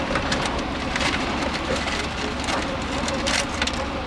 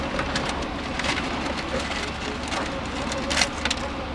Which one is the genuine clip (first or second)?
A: second